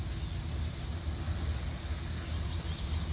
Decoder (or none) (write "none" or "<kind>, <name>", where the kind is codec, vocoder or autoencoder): none